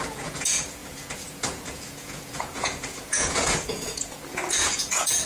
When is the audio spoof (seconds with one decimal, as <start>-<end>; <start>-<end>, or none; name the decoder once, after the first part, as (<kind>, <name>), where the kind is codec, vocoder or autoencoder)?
0.0-5.3 (vocoder, Vocos)